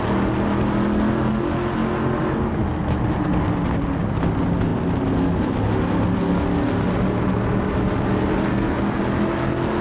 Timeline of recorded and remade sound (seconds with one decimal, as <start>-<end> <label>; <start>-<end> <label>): 0.0-8.5 recorded; 8.5-9.0 remade; 9.0-9.8 recorded